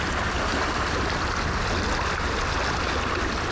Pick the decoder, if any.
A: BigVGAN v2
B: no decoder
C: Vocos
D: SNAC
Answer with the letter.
B